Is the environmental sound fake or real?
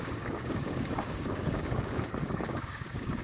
fake